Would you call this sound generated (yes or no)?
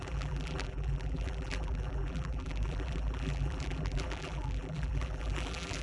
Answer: yes